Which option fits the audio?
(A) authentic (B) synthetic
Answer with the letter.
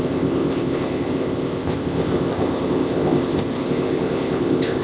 B